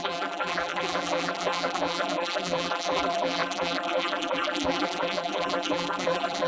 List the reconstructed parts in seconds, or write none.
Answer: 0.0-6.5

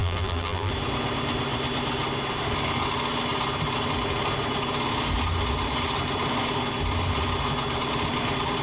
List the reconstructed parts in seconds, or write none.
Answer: 0.0-0.7

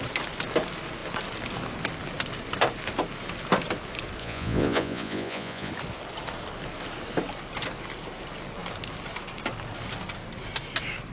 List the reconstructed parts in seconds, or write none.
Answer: 4.2-5.7

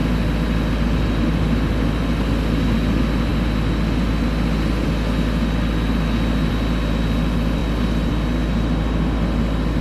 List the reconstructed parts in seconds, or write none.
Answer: none

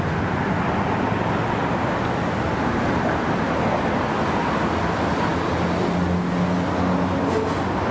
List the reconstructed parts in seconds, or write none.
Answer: none

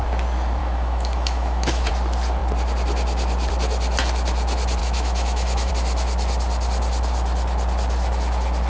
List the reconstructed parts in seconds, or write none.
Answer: 0.6-1.9; 4.8-5.7

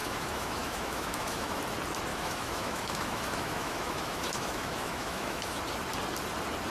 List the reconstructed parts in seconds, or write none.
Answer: 0.0-1.6; 2.1-5.6